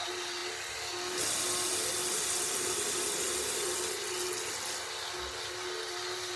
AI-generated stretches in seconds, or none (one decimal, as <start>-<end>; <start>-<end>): none